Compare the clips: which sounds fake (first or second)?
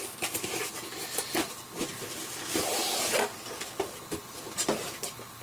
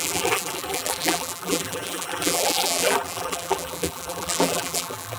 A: second